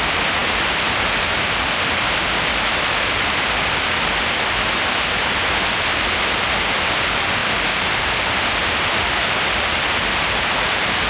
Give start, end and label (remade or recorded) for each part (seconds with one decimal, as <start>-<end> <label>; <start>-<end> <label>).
0.0-11.1 recorded